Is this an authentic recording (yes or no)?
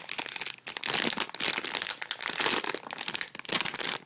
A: yes